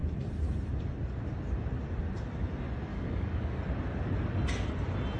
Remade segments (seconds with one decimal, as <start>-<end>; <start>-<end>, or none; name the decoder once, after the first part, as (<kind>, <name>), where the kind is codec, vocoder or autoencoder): 2.9-3.6 (codec, DAC)

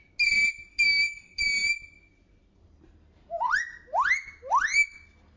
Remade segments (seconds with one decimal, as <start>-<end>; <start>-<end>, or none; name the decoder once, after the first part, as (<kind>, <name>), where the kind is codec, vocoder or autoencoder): 0.7-1.4 (codec, DAC)

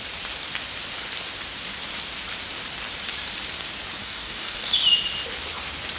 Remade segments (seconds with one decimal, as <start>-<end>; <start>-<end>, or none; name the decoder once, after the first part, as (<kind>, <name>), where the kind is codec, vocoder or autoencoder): 4.0-4.7 (codec, DAC)

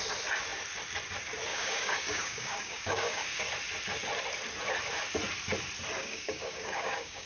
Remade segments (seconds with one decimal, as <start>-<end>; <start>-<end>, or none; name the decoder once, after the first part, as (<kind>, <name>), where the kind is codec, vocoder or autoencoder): 1.5-3.5 (codec, DAC); 6.0-7.3